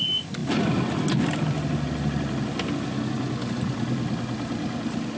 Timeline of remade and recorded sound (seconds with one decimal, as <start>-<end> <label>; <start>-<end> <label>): 0.0-5.2 recorded